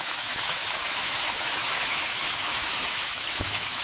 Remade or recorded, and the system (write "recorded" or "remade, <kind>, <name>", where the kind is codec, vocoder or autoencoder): remade, autoencoder, DAC-VAE